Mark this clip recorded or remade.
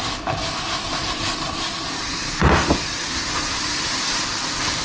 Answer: recorded